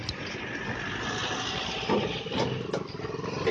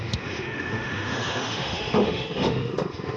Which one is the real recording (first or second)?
first